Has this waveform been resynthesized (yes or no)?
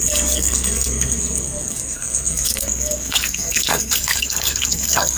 yes